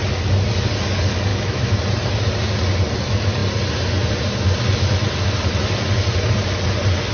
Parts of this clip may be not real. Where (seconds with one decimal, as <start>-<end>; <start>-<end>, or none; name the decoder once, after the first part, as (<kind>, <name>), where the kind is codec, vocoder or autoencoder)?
1.3-1.8 (autoencoder, DAC-VAE)